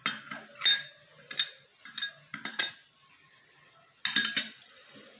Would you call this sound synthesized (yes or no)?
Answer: no